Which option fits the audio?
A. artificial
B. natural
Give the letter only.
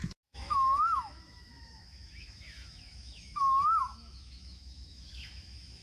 A